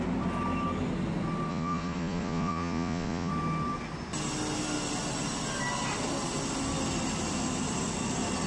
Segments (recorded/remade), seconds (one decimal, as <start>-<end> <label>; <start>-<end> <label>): 0.0-1.5 recorded; 1.5-3.3 remade; 3.3-8.5 recorded